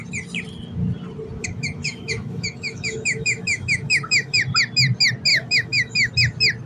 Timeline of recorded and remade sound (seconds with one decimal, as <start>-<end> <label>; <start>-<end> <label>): 0.0-1.4 recorded; 1.4-4.4 remade; 4.4-5.3 recorded; 5.3-6.1 remade; 6.1-6.7 recorded